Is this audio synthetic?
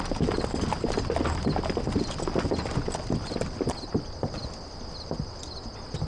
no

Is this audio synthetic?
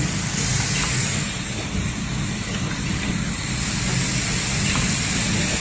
no